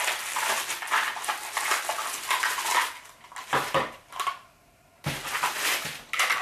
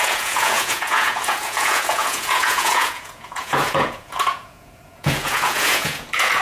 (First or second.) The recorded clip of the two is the first